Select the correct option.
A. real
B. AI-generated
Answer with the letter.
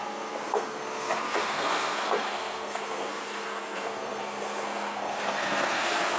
B